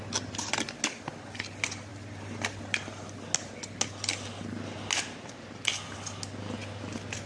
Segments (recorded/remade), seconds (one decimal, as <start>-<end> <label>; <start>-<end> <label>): 0.0-7.3 recorded